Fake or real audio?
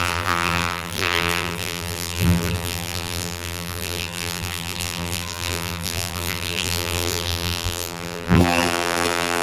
fake